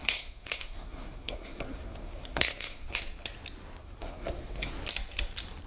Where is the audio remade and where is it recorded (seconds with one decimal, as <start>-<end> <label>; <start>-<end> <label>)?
0.0-3.0 remade; 3.0-3.8 recorded; 3.8-4.7 remade; 4.7-5.7 recorded